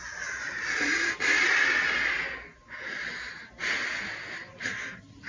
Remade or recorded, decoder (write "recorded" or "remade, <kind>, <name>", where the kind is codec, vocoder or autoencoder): recorded